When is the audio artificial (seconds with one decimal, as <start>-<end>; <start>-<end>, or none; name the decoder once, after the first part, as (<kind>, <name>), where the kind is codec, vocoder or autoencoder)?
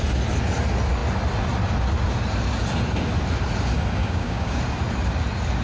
4.0-4.6 (codec, DAC)